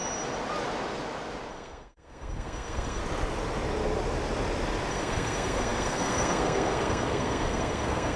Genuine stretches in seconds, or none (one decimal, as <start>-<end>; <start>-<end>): 0.0-1.5; 3.0-4.9